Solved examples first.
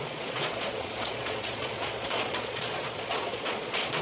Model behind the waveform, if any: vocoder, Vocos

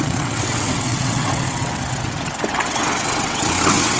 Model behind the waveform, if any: vocoder, WaveNeXt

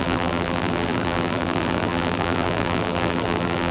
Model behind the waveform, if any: vocoder, BigVGAN v2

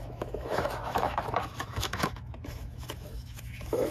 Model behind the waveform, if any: autoencoder, DAC-VAE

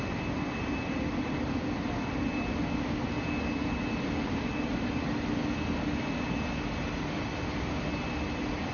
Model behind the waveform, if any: none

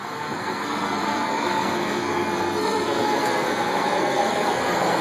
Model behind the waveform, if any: codec, SNAC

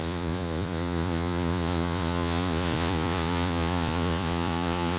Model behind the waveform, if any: vocoder, Vocos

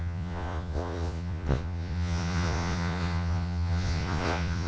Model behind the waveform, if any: vocoder, Vocos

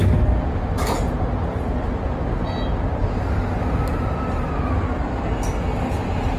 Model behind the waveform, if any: none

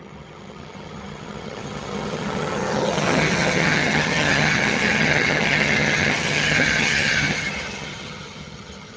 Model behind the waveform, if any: vocoder, HiFi-GAN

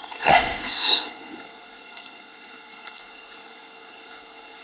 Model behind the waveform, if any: codec, SNAC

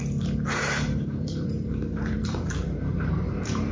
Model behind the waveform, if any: vocoder, BigVGAN v2